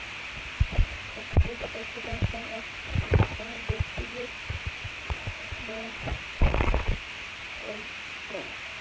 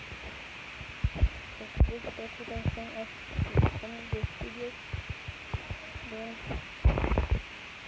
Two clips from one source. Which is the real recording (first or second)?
second